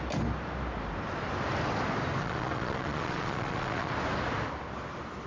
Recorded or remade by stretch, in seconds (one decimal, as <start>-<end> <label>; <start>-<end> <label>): 0.0-2.2 recorded; 2.2-3.9 remade; 3.9-5.3 recorded